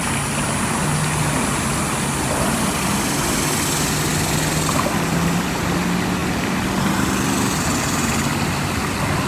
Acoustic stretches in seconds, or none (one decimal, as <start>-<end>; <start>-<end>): 0.0-9.3